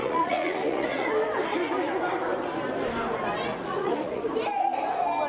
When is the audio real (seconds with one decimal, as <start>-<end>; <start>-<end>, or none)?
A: 1.1-3.5; 4.2-5.3